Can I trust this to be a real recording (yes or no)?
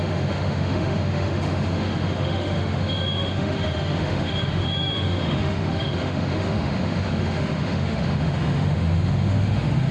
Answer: no